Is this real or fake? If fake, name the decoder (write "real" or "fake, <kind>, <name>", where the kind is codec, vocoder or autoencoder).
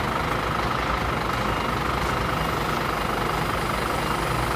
real